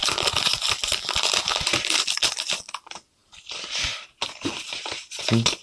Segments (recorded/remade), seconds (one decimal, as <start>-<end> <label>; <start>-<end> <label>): 0.0-5.6 recorded